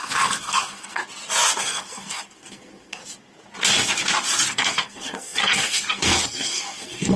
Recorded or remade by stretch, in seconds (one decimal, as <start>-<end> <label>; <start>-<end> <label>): 0.0-1.0 remade; 1.0-1.6 recorded; 1.6-3.0 remade; 3.0-4.5 recorded; 4.5-7.2 remade